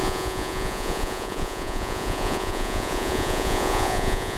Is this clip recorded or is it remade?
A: remade